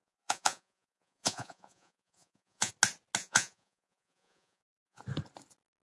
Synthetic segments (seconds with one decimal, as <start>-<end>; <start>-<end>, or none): 0.0-2.7; 3.2-5.0